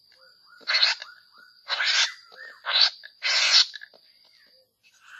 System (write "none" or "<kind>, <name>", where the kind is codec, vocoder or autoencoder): none